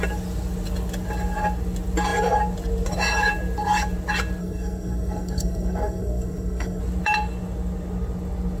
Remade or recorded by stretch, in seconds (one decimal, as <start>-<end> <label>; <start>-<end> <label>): 0.0-4.4 recorded; 4.4-6.8 remade; 6.8-8.6 recorded